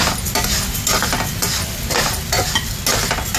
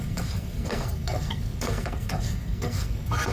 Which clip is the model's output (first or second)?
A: second